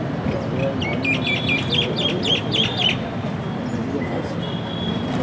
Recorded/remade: recorded